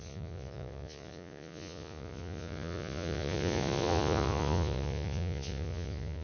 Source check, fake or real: fake